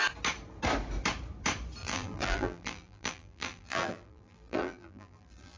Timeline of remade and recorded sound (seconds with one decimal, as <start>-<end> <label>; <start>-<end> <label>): 0.0-1.8 recorded; 1.8-5.6 remade